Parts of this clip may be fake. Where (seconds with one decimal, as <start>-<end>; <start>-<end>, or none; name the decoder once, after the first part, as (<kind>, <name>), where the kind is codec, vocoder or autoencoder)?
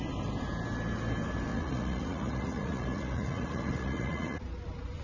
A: 1.5-4.4 (vocoder, Vocos)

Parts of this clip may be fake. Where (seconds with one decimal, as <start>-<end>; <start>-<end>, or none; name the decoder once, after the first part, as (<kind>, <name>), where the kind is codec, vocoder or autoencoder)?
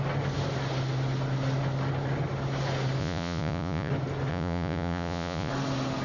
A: 3.0-3.9 (vocoder, Vocos); 4.3-5.5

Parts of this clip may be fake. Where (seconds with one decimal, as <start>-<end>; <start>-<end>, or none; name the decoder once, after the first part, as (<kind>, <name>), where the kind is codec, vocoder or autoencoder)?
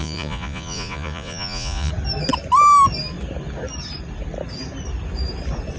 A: 0.0-1.9 (vocoder, Vocos)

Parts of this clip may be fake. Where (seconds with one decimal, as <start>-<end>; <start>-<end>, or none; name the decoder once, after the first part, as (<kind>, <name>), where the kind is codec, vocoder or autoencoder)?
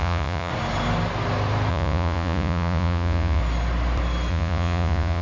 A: 0.0-0.5 (vocoder, Vocos); 1.7-3.4; 4.3-5.2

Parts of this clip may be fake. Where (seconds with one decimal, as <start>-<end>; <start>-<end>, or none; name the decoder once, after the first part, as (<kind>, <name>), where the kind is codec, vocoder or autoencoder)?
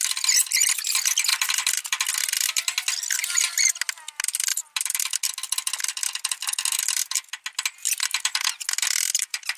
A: none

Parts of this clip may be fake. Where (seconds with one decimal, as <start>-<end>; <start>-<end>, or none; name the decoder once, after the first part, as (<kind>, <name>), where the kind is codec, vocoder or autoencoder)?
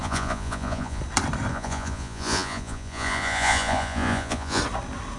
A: 0.0-1.0 (vocoder, Vocos); 1.5-4.6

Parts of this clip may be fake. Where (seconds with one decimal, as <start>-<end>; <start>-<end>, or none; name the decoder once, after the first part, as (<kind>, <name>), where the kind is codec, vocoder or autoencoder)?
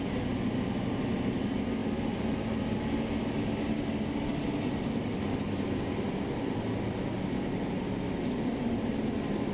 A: none